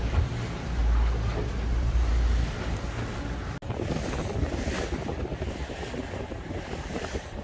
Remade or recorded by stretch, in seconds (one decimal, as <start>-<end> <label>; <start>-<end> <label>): 0.0-0.8 remade; 0.8-1.7 recorded; 1.7-2.1 remade; 2.1-6.2 recorded; 6.2-7.4 remade

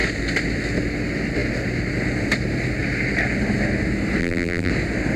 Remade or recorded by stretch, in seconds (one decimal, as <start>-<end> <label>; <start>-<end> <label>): 0.0-4.2 recorded; 4.2-4.7 remade; 4.7-5.2 recorded

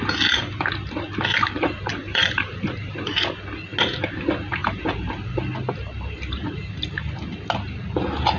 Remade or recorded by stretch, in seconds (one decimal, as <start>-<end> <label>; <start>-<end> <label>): 0.0-1.9 recorded; 1.9-3.1 remade; 3.1-4.6 recorded; 4.6-5.4 remade; 5.4-8.4 recorded

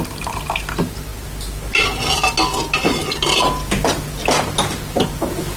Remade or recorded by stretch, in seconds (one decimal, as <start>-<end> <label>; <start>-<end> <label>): 0.0-5.6 recorded

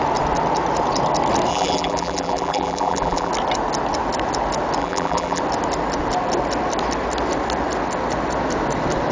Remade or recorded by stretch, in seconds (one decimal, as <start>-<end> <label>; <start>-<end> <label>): 0.0-1.5 recorded; 1.5-3.3 remade; 3.3-4.8 recorded; 4.8-5.4 remade; 5.4-9.1 recorded

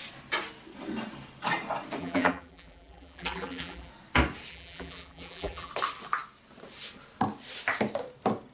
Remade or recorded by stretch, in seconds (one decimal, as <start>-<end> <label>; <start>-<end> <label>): 0.0-2.0 recorded; 2.0-3.9 remade; 3.9-4.5 recorded; 4.5-5.7 remade; 5.7-8.5 recorded

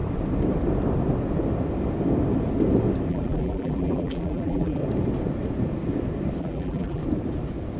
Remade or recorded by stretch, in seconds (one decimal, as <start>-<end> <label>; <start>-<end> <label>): 0.0-3.1 recorded; 3.1-4.8 remade; 4.8-6.4 recorded; 6.4-7.0 remade; 7.0-7.8 recorded

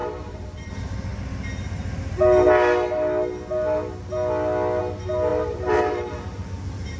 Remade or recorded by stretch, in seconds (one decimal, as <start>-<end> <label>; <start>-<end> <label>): 0.0-0.7 remade; 0.7-5.3 recorded; 5.3-7.0 remade